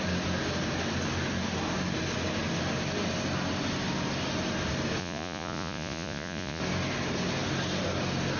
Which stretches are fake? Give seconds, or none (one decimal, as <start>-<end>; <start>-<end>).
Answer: 5.0-6.6